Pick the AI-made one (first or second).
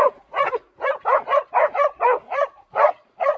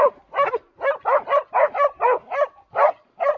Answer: first